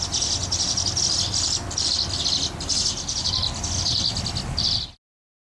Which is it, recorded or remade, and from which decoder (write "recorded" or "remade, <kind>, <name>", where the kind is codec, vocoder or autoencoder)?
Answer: recorded